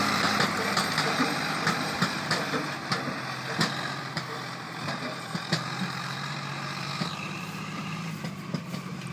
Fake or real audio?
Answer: fake